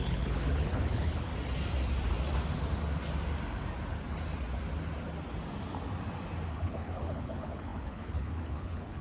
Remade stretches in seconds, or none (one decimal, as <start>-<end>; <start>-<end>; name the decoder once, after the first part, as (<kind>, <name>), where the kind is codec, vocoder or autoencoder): 0.0-1.3 (codec, HILCodec); 6.5-9.0